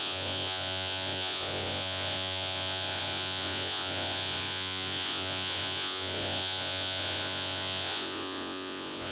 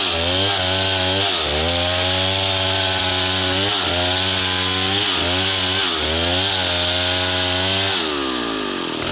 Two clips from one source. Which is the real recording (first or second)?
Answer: second